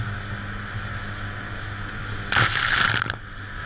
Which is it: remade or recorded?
recorded